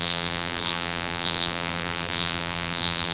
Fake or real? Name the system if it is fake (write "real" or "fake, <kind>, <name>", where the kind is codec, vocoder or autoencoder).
fake, vocoder, BigVGAN v2